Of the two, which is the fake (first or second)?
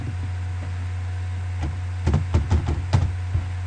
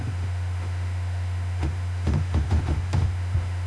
second